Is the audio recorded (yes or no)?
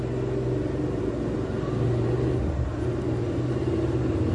yes